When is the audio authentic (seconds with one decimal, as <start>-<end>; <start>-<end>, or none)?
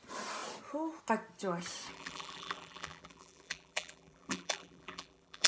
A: 0.0-1.9